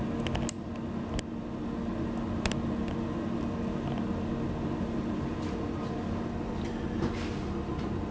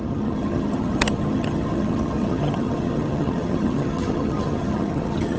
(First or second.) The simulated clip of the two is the second